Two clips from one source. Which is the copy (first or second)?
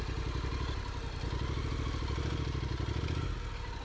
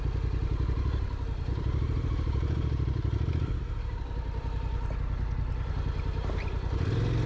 second